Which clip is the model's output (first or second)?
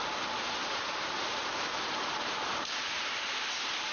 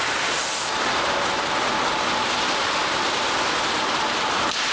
first